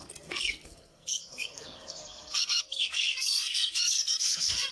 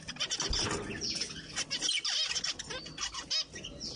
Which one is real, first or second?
second